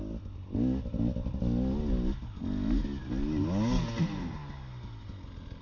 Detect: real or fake real